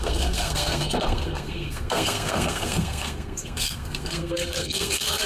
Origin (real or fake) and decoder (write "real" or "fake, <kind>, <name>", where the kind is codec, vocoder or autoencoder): fake, codec, SNAC